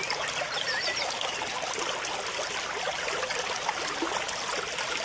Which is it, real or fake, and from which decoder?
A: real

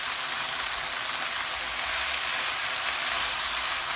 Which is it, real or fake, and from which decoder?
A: real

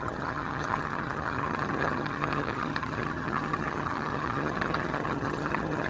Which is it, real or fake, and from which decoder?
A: fake, vocoder, HiFi-GAN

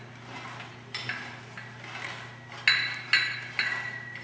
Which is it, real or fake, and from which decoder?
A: real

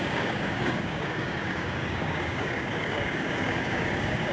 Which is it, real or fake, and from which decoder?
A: fake, codec, DAC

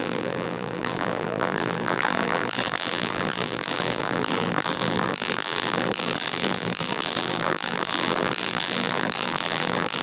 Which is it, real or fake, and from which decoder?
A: fake, vocoder, BigVGAN v2